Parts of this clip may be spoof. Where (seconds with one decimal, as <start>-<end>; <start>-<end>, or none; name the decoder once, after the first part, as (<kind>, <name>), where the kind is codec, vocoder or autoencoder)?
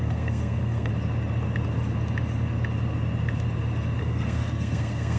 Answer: 0.0-0.9 (codec, SNAC); 4.0-5.2